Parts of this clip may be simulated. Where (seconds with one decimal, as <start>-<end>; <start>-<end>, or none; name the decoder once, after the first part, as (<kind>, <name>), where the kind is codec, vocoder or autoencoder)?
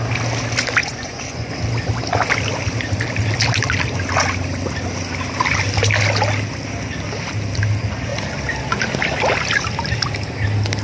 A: 0.8-1.5 (vocoder, Vocos)